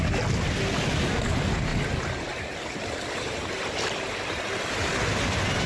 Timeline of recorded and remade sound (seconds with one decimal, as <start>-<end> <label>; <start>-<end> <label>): 0.0-5.7 recorded